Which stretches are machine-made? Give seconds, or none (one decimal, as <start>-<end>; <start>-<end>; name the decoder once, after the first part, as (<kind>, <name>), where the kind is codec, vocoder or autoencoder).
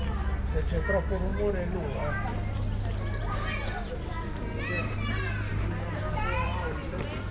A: 5.5-6.0 (vocoder, BigVGAN v2)